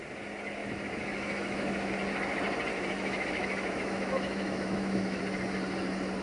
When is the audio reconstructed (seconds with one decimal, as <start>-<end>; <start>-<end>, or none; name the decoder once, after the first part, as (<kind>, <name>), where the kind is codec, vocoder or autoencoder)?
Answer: 0.6-1.9 (autoencoder, DAC-VAE); 2.7-5.2